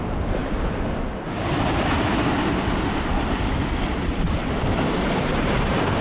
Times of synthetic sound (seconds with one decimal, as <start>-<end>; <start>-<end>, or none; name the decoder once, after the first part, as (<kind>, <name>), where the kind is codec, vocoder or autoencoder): 0.0-0.4 (vocoder, BigVGAN v2); 4.0-4.4; 5.0-6.0